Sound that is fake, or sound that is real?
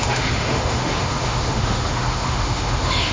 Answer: fake